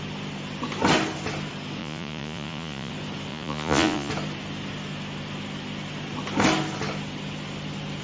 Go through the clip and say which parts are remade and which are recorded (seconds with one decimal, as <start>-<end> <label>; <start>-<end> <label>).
0.0-1.8 recorded; 1.8-2.9 remade; 2.9-3.3 recorded; 3.3-4.1 remade; 4.1-8.0 recorded